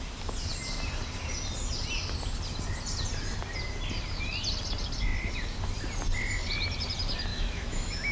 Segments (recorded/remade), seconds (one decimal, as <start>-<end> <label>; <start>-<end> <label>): 0.0-7.3 recorded; 7.3-8.1 remade